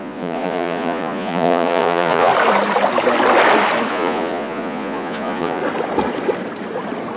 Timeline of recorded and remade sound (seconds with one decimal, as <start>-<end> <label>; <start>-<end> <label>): 0.0-2.3 remade; 2.3-3.9 recorded; 3.9-5.6 remade; 5.6-7.2 recorded